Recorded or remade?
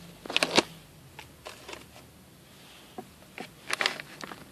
recorded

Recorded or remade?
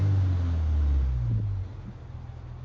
recorded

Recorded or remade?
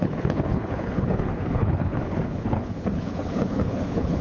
remade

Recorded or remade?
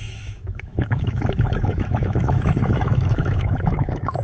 remade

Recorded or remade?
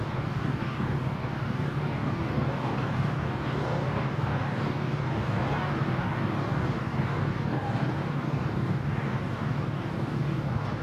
remade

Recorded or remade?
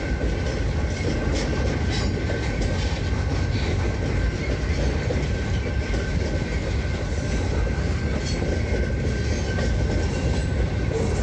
recorded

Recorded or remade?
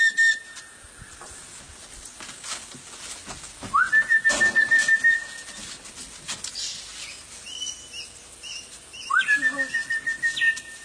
recorded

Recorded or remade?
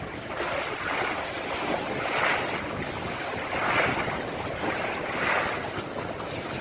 recorded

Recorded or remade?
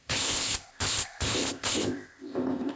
remade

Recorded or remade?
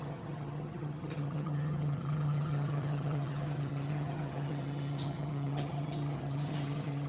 remade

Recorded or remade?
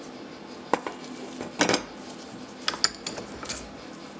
recorded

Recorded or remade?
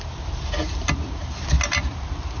recorded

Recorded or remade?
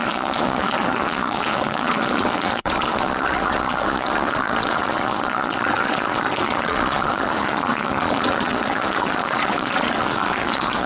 remade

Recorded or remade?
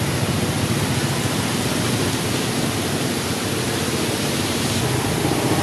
recorded